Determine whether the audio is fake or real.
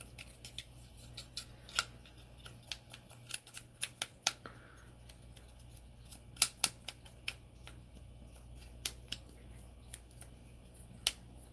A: real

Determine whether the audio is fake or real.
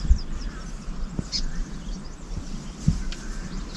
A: real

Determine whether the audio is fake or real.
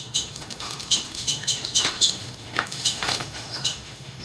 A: fake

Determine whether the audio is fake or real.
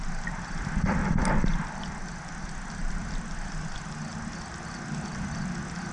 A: real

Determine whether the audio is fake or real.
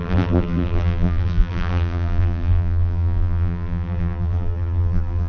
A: fake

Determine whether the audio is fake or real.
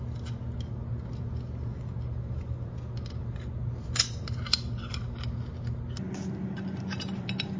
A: real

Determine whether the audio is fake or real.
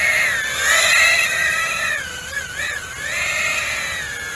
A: real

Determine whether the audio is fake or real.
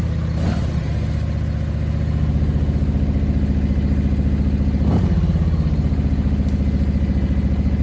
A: real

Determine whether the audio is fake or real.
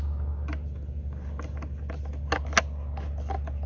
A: real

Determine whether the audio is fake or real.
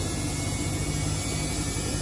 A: real